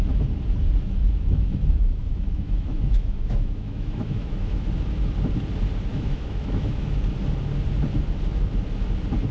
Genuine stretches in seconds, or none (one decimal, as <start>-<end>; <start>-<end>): 0.0-1.0; 4.7-5.9; 7.0-9.3